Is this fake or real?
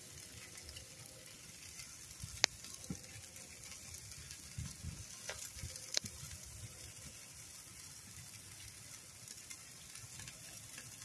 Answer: real